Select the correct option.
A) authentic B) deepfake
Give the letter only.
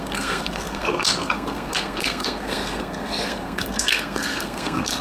B